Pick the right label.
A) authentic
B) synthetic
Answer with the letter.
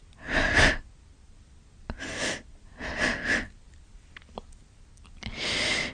A